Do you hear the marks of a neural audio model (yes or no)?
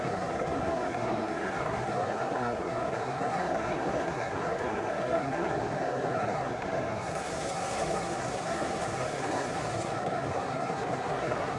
yes